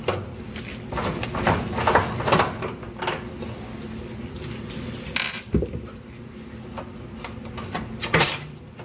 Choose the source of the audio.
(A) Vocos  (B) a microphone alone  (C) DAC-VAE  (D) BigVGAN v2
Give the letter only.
B